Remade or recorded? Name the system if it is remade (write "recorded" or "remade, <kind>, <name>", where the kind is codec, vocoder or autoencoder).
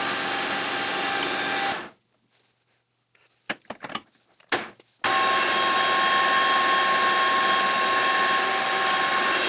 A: recorded